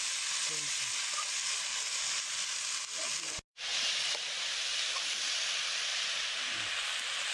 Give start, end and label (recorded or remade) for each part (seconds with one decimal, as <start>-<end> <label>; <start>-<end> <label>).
0.0-3.5 recorded; 3.5-4.9 remade; 4.9-5.9 recorded; 5.9-6.7 remade; 6.7-7.3 recorded